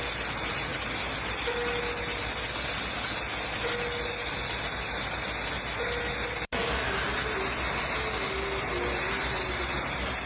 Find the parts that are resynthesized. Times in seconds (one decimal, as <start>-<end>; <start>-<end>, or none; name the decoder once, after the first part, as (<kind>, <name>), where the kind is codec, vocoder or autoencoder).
none